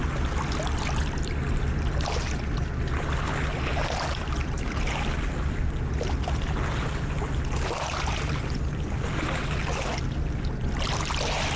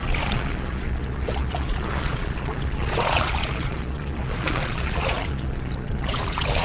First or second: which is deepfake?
second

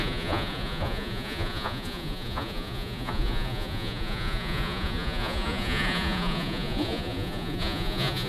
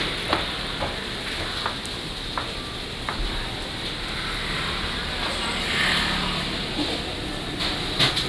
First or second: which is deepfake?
first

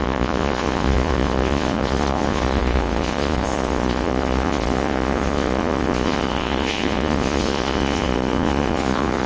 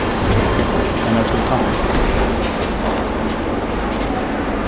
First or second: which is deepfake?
first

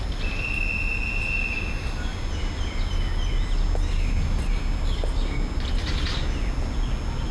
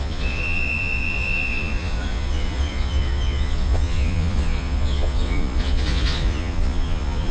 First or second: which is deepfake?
second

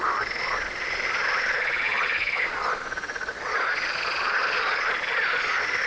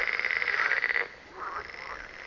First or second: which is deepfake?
first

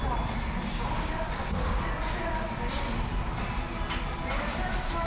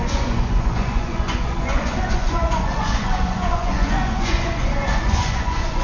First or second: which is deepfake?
second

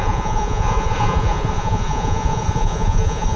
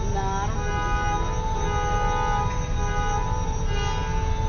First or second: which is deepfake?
first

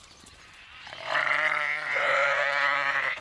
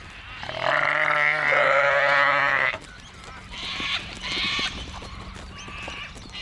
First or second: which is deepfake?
first